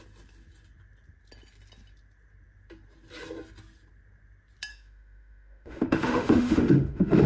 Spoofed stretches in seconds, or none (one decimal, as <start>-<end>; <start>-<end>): 4.7-7.3